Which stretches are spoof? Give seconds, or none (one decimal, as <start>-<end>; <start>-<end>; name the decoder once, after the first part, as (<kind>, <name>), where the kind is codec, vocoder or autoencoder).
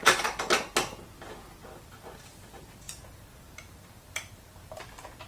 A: 0.0-0.6 (vocoder, BigVGAN v2); 1.6-4.8